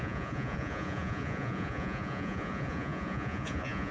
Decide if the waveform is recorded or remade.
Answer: remade